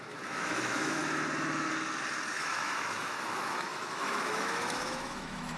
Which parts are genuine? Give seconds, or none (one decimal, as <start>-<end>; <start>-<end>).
1.0-2.3